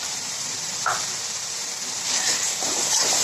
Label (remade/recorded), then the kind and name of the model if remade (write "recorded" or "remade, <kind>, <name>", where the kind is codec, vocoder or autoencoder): remade, vocoder, BigVGAN v2